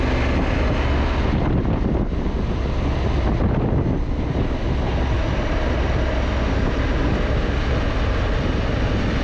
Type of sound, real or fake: real